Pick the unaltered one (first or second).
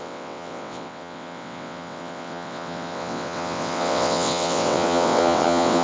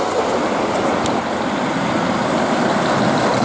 second